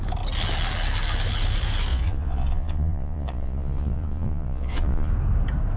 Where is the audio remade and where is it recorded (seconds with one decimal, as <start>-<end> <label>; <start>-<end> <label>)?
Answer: 0.0-1.9 recorded; 1.9-5.1 remade; 5.1-5.8 recorded